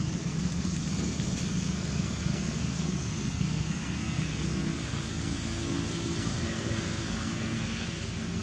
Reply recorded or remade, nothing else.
remade